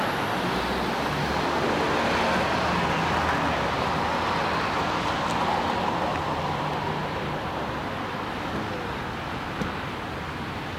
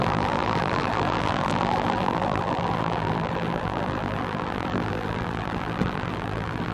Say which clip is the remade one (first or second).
second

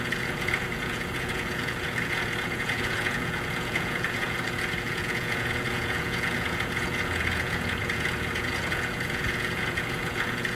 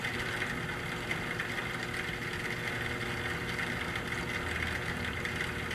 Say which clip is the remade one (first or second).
first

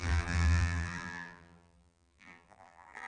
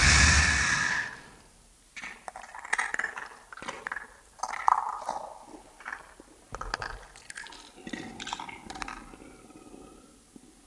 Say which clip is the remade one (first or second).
first